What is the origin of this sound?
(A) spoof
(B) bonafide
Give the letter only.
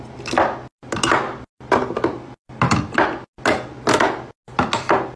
B